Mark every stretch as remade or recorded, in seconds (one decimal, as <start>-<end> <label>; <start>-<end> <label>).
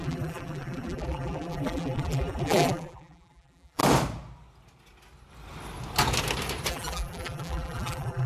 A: 0.0-3.8 remade; 3.8-6.7 recorded; 6.7-8.3 remade